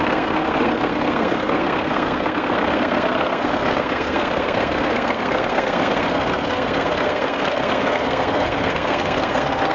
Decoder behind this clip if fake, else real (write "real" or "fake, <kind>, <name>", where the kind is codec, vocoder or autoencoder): fake, codec, SNAC